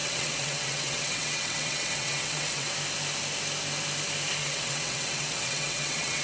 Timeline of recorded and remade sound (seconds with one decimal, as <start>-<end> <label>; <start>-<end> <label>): 0.0-2.7 remade; 2.7-4.4 recorded; 4.4-6.2 remade